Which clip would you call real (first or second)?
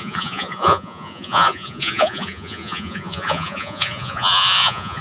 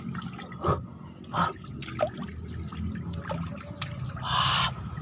second